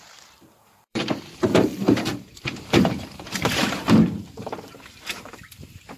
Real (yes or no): no